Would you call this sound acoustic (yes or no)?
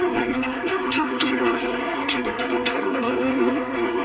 no